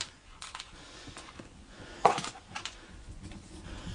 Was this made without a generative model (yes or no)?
no